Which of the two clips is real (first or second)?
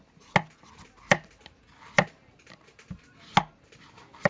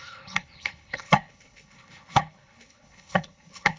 first